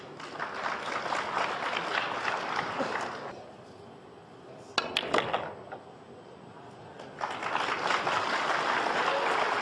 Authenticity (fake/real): real